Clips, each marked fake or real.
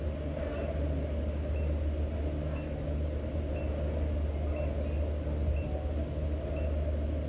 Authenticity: real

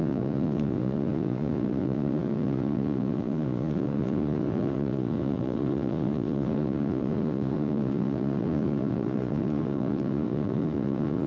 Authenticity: fake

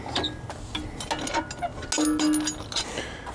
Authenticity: real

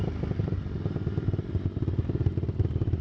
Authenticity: real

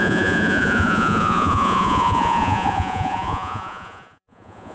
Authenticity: fake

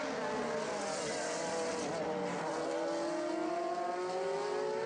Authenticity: real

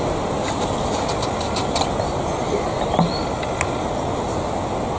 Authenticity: real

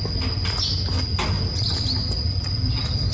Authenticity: real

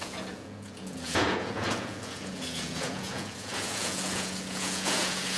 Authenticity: fake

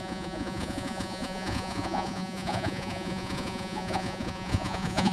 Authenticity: fake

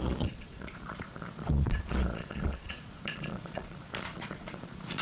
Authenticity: fake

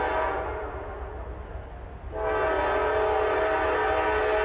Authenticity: real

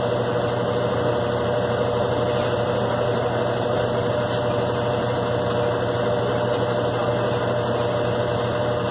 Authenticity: real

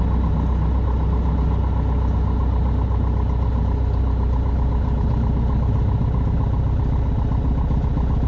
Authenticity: real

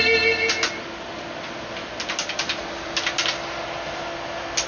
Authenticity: real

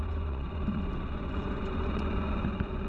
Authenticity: fake